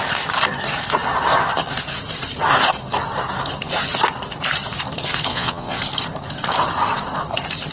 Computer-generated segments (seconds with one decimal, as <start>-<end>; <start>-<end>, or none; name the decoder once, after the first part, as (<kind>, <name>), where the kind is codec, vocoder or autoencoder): 5.3-5.8 (vocoder, Vocos)